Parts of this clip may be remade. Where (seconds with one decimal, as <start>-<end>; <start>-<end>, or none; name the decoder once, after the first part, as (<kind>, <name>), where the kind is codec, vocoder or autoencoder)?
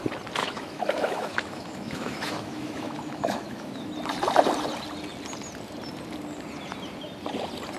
0.4-3.9 (autoencoder, DAC-VAE)